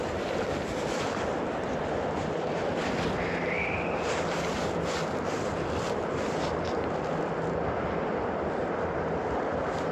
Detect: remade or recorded recorded